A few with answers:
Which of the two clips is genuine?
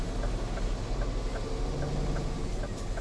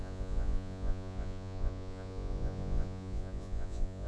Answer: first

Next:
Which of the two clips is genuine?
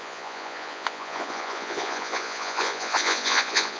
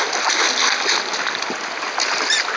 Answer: second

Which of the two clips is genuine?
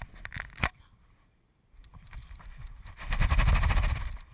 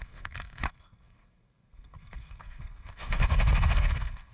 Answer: first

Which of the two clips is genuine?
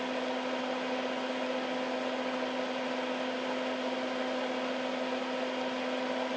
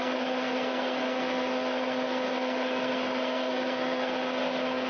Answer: first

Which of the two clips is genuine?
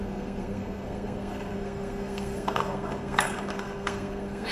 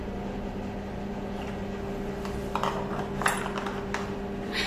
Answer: second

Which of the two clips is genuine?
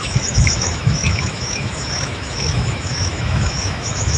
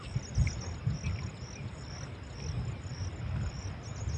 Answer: second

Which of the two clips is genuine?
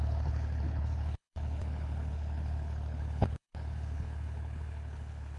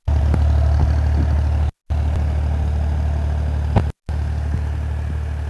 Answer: second